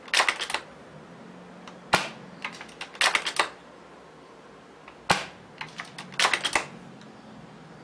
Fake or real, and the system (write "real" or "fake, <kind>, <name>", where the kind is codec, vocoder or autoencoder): real